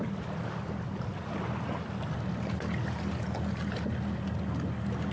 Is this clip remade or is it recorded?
recorded